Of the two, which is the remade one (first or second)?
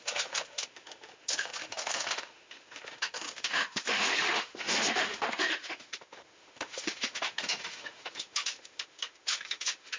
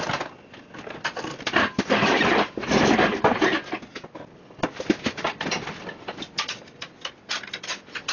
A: first